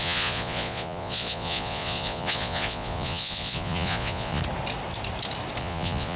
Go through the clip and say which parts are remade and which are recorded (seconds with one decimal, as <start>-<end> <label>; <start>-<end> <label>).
0.0-4.4 remade; 4.4-5.6 recorded; 5.6-6.2 remade